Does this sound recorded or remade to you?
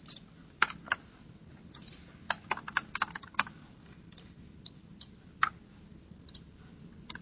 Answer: recorded